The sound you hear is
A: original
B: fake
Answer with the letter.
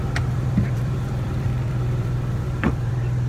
B